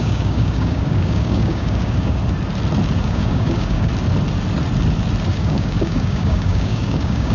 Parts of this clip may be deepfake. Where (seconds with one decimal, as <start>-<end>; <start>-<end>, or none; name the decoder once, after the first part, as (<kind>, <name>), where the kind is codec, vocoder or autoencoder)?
0.0-2.2 (codec, DAC); 3.0-3.9; 5.3-7.3